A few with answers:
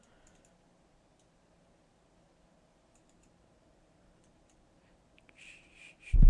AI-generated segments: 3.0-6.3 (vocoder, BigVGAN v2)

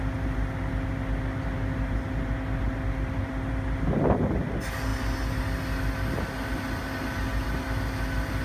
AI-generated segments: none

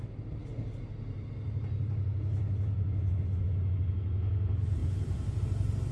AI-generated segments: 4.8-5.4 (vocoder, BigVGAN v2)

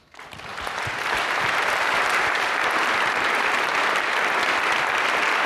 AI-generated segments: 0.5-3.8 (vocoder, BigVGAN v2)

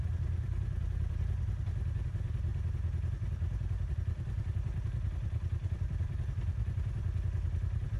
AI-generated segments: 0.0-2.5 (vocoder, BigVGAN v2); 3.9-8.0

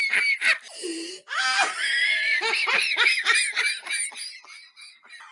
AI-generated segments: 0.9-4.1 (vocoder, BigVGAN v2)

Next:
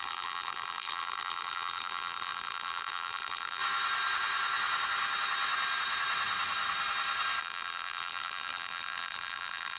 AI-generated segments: 0.0-3.6 (vocoder, BigVGAN v2); 7.4-9.8